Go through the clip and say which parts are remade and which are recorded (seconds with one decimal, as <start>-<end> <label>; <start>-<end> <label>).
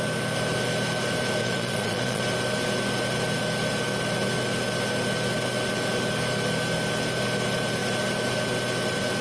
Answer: 0.0-1.4 recorded; 1.4-2.2 remade; 2.2-9.2 recorded